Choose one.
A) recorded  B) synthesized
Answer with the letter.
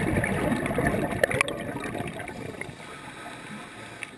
A